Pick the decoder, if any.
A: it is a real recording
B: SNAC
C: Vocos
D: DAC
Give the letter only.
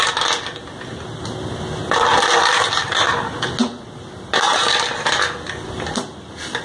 A